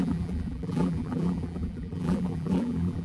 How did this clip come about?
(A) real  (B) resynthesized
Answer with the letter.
B